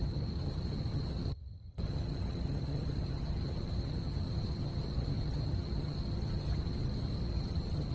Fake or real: fake